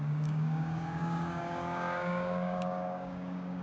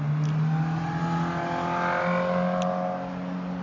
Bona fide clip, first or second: second